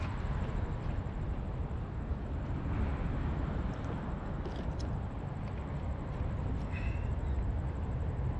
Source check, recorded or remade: recorded